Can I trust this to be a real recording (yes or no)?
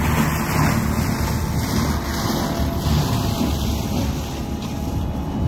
yes